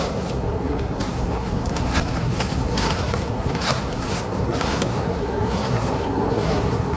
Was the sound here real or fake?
fake